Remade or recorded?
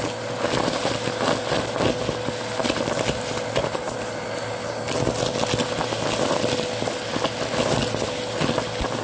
recorded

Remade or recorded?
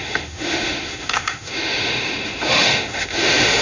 remade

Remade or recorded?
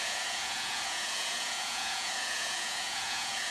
remade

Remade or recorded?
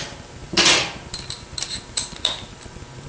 remade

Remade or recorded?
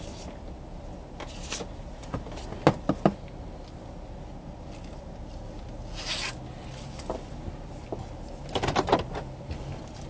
recorded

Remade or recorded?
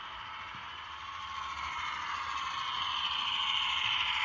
recorded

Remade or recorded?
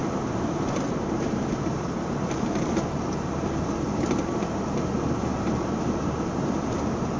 remade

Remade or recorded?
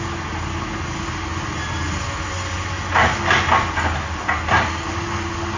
recorded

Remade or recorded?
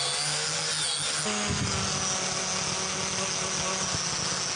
recorded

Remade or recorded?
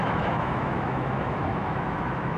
remade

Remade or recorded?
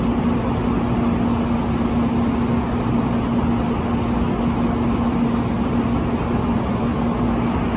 recorded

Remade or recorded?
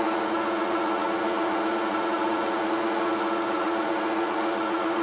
remade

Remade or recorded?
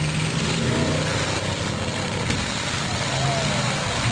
recorded